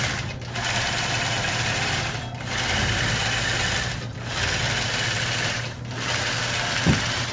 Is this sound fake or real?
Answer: real